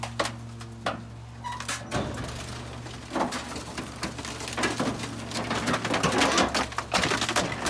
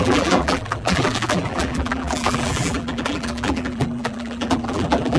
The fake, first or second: second